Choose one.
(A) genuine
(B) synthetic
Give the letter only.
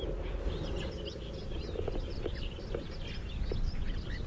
A